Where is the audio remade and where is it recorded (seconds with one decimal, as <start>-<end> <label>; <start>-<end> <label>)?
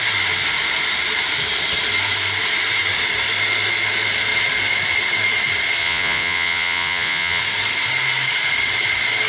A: 0.0-5.8 recorded; 5.8-7.4 remade; 7.4-9.3 recorded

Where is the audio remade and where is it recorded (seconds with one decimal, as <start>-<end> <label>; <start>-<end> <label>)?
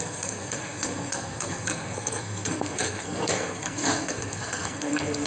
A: 0.0-5.3 remade